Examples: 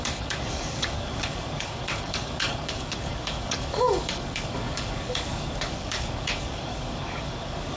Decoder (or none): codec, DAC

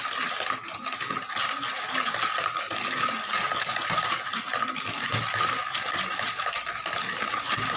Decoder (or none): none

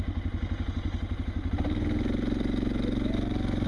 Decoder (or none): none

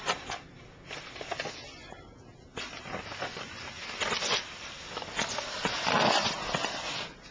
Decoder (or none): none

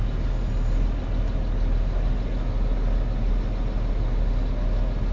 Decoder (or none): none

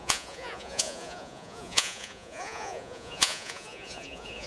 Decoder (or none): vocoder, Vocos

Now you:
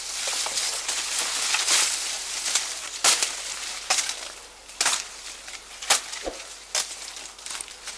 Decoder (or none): none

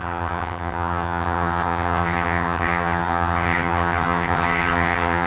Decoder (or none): vocoder, HiFi-GAN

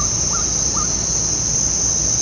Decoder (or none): none